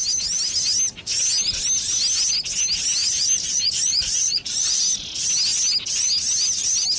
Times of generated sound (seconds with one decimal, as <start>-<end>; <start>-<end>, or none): 3.0-4.8